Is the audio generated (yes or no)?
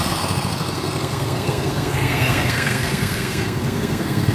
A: yes